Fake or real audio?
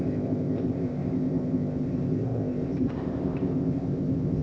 fake